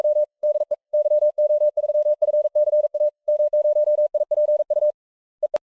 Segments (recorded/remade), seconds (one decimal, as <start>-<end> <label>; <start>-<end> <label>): 0.0-3.5 remade; 3.5-5.8 recorded